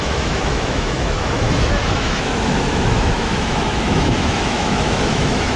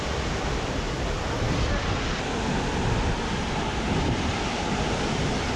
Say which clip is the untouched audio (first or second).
second